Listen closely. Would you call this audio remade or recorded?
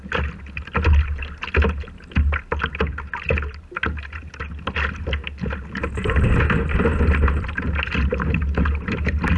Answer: recorded